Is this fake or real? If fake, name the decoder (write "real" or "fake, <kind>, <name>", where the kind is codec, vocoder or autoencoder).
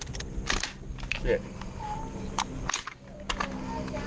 real